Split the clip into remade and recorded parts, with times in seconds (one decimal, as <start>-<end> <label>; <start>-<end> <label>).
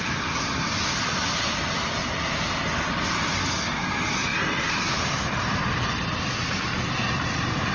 0.0-2.0 recorded; 2.0-2.7 remade; 2.7-6.7 recorded; 6.7-7.7 remade